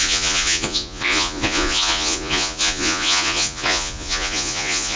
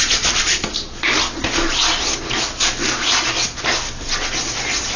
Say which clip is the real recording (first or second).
second